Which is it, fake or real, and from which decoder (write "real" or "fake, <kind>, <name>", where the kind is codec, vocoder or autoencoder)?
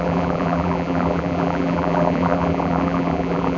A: fake, vocoder, BigVGAN v2